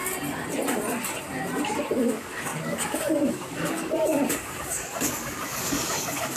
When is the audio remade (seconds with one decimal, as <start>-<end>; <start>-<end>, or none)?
2.1-6.4